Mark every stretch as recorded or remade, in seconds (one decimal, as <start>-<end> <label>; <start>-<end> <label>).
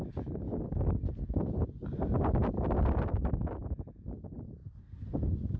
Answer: 0.0-5.6 recorded